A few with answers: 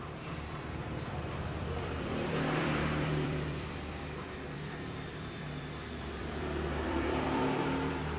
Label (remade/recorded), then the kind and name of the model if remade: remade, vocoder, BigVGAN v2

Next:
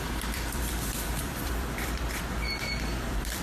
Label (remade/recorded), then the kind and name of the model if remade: remade, vocoder, BigVGAN v2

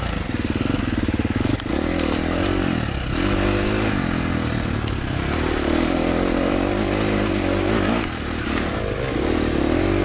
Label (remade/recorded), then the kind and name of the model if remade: recorded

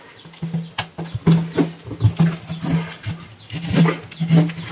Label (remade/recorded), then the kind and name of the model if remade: recorded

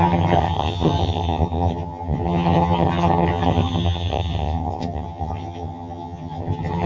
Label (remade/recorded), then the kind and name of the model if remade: remade, vocoder, HiFi-GAN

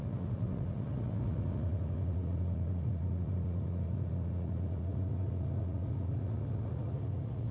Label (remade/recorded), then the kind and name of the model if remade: remade, vocoder, Vocos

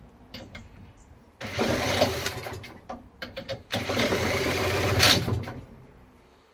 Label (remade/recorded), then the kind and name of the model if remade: remade, vocoder, BigVGAN v2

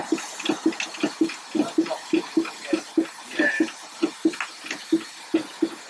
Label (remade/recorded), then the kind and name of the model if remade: recorded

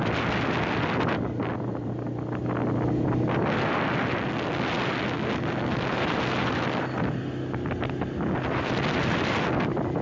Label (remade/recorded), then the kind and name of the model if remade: recorded